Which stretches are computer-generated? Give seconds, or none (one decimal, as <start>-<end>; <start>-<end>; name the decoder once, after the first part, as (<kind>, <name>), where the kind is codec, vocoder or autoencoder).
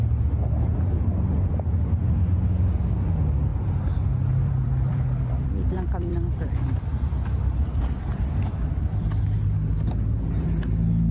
3.5-8.1 (vocoder, BigVGAN v2)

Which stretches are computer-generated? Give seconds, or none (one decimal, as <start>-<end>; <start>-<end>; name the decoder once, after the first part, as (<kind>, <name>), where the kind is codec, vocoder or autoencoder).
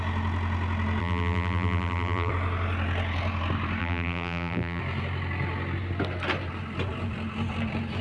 1.0-2.3 (vocoder, BigVGAN v2); 3.8-4.8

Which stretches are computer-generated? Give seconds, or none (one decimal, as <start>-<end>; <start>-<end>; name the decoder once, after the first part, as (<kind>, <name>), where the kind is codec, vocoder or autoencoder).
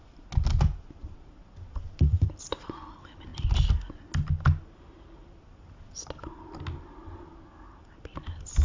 none